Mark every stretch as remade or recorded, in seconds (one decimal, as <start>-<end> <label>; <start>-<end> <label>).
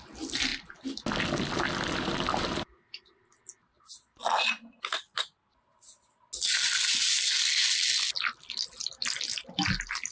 0.0-10.1 recorded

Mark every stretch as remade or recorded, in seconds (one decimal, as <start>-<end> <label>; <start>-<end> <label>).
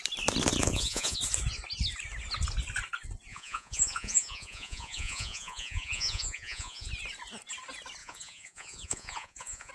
0.0-0.6 recorded; 0.6-1.2 remade; 1.2-3.3 recorded; 3.3-6.9 remade; 6.9-8.0 recorded; 8.0-9.7 remade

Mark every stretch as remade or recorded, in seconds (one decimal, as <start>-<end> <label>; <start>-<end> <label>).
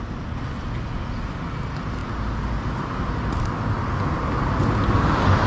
0.0-5.5 recorded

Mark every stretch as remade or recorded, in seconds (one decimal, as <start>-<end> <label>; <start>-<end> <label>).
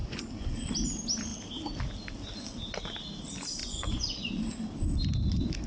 0.0-0.7 remade; 0.7-3.6 recorded; 3.6-4.3 remade; 4.3-5.7 recorded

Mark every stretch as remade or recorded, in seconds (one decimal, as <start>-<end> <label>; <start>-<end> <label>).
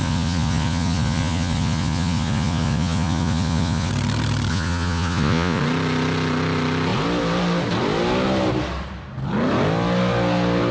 0.0-3.9 remade; 3.9-4.5 recorded; 4.5-5.6 remade; 5.6-10.7 recorded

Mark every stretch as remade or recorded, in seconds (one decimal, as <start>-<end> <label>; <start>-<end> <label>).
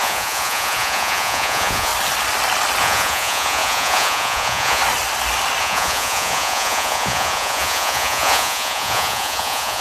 0.0-1.9 remade; 1.9-2.8 recorded; 2.8-4.8 remade; 4.8-5.6 recorded; 5.6-9.8 remade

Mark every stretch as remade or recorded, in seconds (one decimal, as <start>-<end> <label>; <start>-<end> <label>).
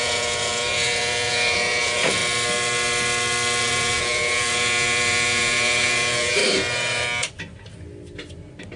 0.0-2.2 remade; 2.2-3.6 recorded; 3.6-6.4 remade; 6.4-8.8 recorded